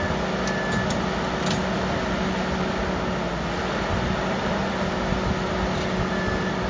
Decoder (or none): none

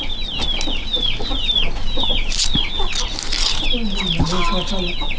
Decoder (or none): none